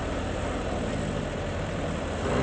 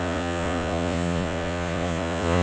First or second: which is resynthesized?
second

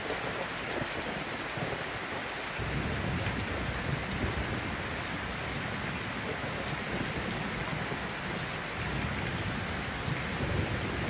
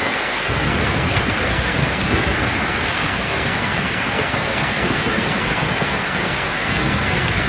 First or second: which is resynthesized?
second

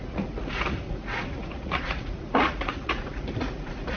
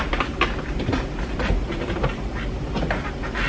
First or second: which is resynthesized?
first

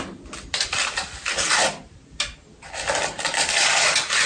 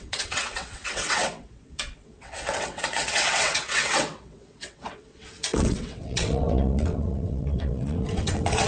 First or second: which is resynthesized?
second